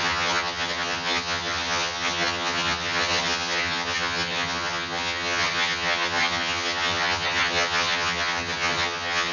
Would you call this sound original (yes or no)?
no